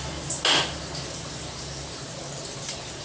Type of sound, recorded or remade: recorded